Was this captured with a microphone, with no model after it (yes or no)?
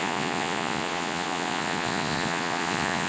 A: no